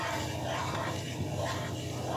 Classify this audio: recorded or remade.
recorded